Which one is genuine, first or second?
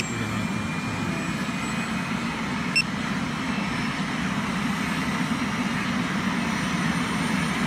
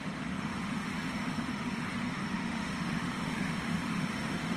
first